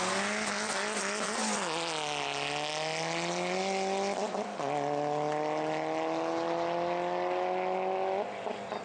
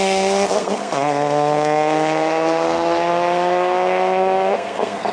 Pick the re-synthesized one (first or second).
second